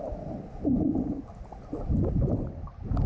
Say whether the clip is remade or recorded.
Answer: recorded